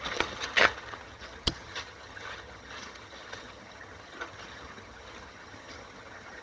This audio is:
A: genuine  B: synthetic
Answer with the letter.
B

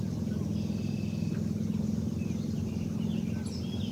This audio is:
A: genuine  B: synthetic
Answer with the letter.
A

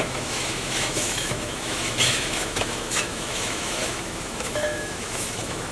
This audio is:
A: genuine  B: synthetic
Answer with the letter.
B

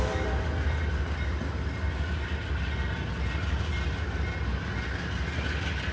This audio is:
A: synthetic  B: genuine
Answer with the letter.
B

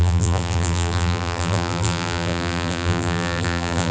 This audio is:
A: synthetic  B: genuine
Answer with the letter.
A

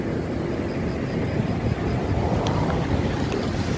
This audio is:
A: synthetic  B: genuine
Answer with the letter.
B